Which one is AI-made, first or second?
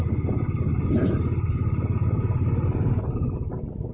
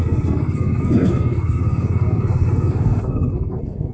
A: second